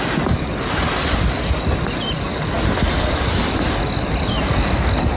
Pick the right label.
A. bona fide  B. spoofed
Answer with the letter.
A